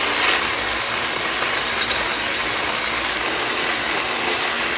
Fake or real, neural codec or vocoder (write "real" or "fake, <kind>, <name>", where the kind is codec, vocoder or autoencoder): real